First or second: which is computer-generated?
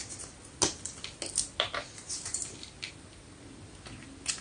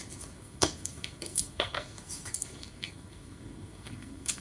second